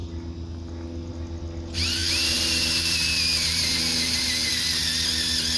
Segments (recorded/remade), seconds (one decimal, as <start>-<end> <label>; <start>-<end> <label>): 0.0-2.0 recorded; 2.0-4.5 remade; 4.5-5.6 recorded